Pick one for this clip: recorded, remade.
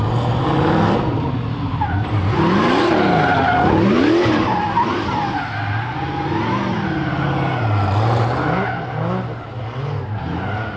recorded